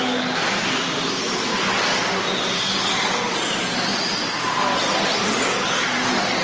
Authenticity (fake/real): real